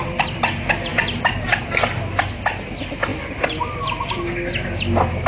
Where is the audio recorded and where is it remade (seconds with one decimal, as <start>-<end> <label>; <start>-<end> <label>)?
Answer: 0.0-5.3 recorded

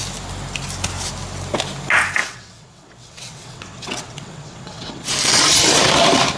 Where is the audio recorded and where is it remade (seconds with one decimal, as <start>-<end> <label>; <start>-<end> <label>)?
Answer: 0.0-2.2 recorded; 2.2-5.1 remade; 5.1-6.4 recorded

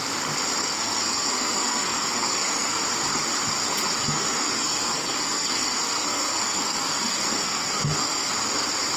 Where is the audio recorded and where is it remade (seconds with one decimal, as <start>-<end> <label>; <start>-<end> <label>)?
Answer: 0.0-0.6 recorded; 0.6-2.8 remade; 2.8-4.0 recorded; 4.0-8.3 remade; 8.3-9.0 recorded